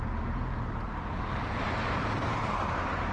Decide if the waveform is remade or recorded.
remade